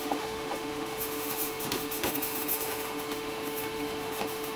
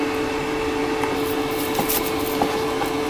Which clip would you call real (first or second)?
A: second